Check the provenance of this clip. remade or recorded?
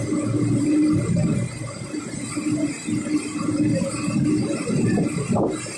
recorded